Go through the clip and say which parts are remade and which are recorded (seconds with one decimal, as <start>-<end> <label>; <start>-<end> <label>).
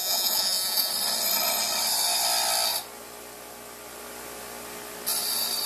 0.0-0.9 remade; 0.9-5.7 recorded